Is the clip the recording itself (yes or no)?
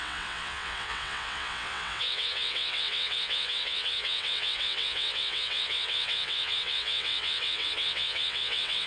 no